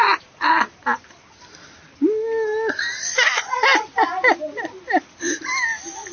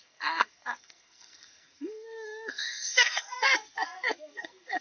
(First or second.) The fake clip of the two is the second